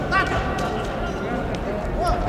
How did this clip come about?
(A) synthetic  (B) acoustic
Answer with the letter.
B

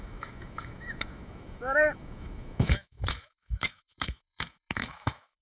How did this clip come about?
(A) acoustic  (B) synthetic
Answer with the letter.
B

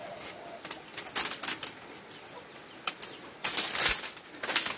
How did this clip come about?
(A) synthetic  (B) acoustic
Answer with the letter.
B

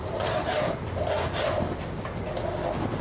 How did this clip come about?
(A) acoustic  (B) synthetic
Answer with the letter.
A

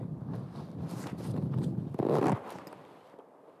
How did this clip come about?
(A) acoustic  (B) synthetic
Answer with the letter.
A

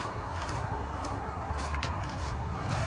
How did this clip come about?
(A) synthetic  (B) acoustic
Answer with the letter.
A